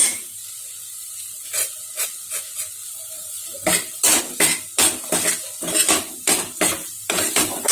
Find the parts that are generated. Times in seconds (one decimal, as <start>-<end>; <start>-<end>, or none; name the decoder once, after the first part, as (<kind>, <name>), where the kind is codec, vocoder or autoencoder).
0.9-1.8 (vocoder, BigVGAN v2); 2.8-4.2; 6.8-7.7

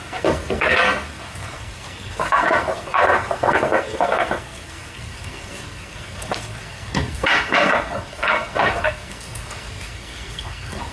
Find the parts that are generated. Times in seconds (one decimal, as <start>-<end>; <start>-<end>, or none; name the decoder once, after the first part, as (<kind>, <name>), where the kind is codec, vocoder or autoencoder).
0.0-10.9 (codec, SNAC)

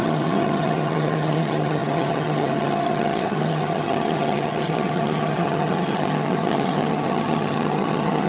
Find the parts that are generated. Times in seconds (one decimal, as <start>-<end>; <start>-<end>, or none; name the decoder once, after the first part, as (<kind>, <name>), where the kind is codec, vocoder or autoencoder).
0.0-8.3 (vocoder, HiFi-GAN)

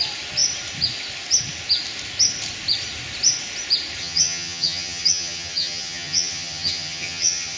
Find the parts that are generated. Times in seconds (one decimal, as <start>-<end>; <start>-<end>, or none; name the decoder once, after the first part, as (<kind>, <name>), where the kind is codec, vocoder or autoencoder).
4.0-7.6 (vocoder, HiFi-GAN)

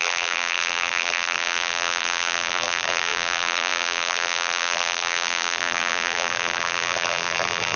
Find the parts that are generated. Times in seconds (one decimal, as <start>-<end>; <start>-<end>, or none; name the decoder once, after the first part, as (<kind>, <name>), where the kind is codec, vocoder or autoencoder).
0.0-7.8 (vocoder, BigVGAN v2)

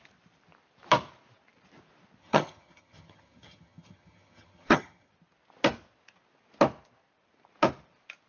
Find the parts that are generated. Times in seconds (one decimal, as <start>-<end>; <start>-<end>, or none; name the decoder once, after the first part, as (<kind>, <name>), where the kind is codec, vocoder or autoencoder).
2.2-5.1 (vocoder, HiFi-GAN)

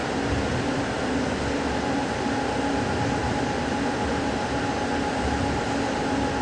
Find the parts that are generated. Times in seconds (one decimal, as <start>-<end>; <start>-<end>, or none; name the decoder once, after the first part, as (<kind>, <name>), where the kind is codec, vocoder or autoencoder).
none